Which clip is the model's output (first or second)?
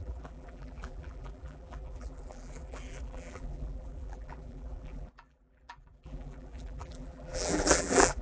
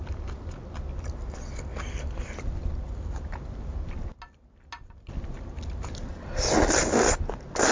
first